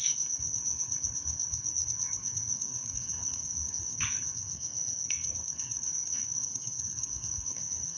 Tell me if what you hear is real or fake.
fake